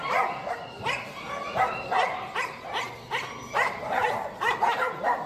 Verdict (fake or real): real